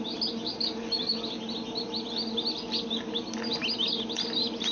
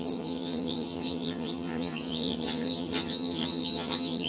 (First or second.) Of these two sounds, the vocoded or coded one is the second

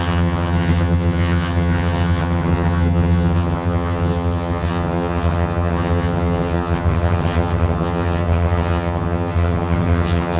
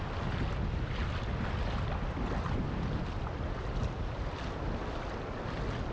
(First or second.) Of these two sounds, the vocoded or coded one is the first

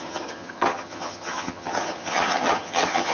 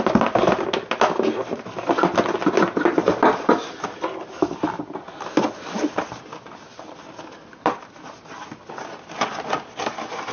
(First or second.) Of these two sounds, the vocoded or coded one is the first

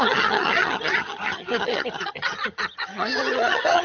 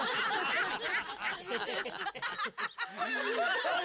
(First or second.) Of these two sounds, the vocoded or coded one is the first